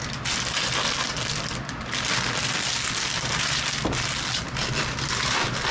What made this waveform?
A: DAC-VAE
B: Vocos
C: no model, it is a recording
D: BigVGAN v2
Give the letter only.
C